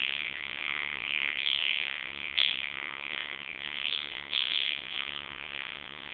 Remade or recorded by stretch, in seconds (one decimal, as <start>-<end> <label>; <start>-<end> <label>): 0.0-6.1 remade